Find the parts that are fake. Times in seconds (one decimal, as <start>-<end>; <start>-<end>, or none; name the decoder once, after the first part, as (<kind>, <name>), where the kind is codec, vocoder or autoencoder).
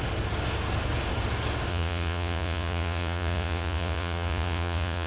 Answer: 1.7-5.1 (vocoder, Vocos)